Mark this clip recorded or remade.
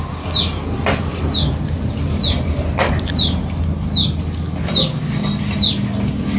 recorded